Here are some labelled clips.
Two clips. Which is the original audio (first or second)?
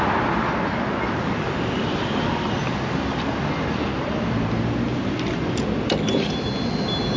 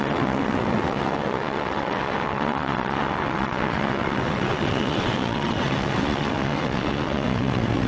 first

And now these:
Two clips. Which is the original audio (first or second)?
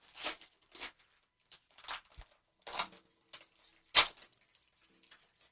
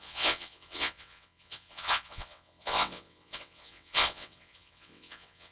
first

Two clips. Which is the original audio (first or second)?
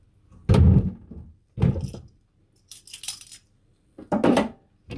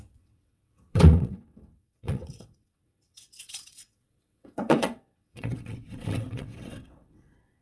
first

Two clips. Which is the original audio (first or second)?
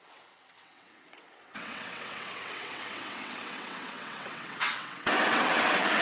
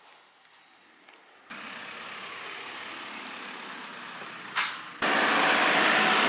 second